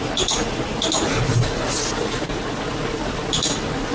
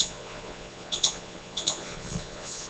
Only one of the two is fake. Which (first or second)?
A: second